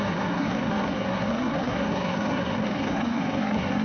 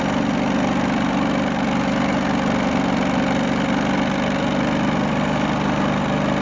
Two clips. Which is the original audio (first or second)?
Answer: second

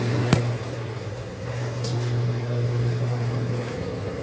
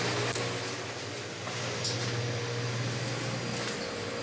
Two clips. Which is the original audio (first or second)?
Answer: second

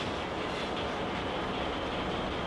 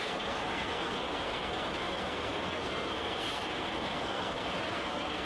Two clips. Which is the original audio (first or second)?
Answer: first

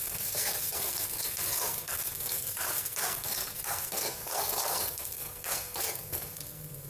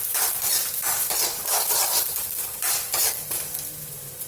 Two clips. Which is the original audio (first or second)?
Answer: second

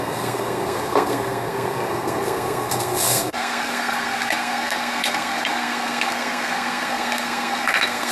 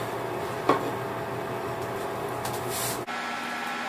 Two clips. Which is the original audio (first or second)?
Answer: second